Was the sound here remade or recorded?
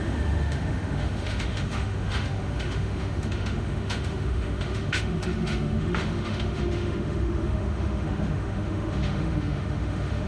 remade